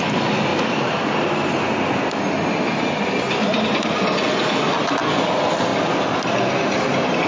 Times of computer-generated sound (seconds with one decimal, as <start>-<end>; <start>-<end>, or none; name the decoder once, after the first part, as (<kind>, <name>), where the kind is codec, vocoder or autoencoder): none